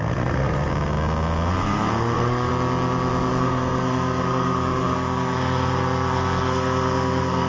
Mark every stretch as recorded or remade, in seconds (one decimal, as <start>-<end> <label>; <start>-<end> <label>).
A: 0.0-0.7 remade; 0.7-1.5 recorded; 1.5-2.5 remade; 2.5-3.3 recorded; 3.3-7.5 remade